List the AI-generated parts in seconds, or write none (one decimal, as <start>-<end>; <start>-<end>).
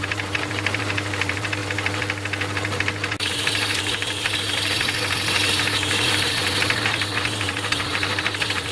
0.0-1.6; 3.3-8.7